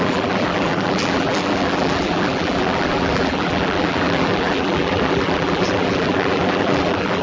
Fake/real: fake